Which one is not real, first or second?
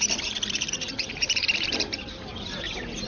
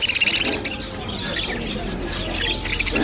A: first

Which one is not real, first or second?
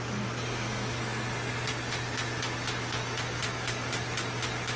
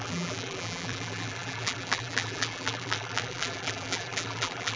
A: second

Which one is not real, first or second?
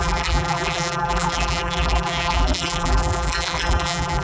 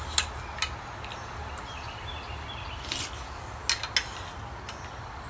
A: first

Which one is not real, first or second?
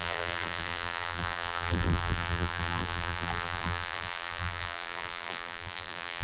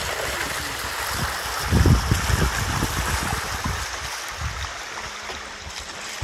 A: first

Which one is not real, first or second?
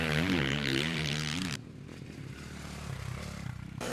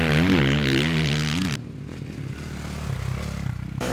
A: first